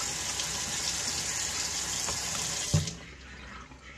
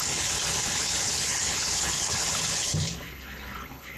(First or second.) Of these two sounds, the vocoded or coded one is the second